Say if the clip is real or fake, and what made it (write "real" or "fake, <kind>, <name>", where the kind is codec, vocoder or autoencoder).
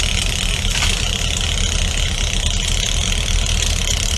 real